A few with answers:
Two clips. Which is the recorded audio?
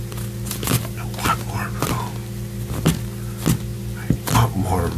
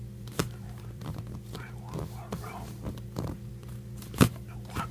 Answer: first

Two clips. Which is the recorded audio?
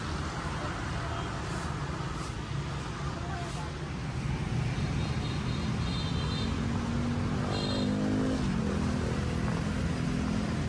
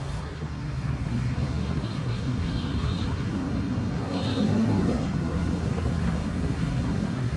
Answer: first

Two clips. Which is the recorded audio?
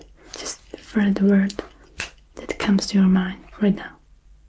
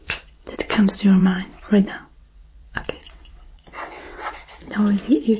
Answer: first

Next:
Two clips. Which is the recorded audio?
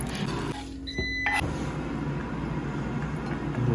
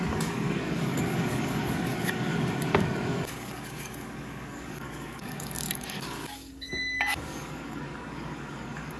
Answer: first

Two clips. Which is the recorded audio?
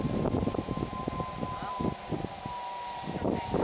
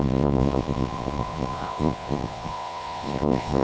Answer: first